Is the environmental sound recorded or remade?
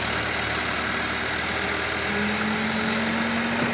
recorded